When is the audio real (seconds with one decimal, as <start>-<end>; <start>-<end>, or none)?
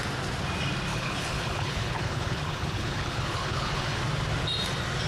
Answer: 0.0-0.9; 4.0-5.1